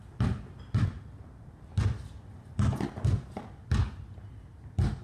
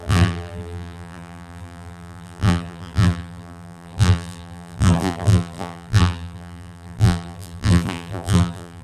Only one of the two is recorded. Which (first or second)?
first